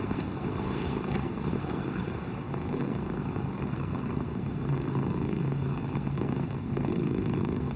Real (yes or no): no